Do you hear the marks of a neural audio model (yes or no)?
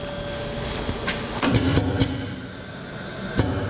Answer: no